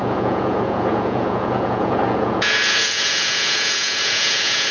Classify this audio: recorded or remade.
remade